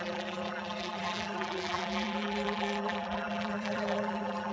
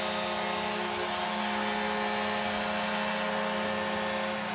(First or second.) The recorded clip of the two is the second